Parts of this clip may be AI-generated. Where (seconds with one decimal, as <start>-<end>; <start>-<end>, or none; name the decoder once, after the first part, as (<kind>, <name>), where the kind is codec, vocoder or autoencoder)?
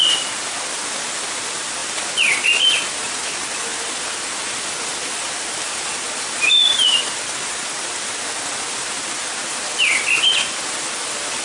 1.8-3.1 (vocoder, BigVGAN v2); 3.7-7.1